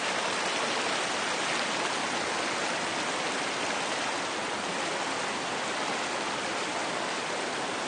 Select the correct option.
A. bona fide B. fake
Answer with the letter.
A